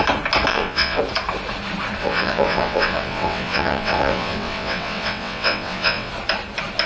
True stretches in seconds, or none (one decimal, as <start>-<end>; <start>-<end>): 0.0-0.5; 1.0-2.0; 6.1-6.9